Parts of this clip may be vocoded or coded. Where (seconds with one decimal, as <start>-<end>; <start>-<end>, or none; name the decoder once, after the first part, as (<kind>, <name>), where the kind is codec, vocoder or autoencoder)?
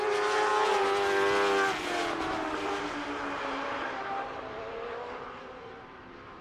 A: 0.0-0.5 (vocoder, BigVGAN v2); 2.2-6.4